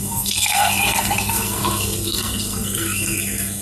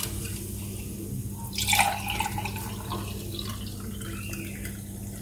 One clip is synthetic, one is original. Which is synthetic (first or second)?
first